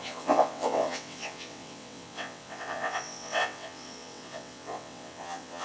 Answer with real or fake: fake